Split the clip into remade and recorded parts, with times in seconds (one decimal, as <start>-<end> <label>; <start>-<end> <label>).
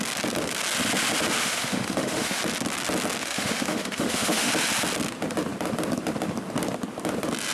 0.0-1.4 recorded; 1.4-2.4 remade; 2.4-3.2 recorded; 3.2-4.5 remade; 4.5-7.5 recorded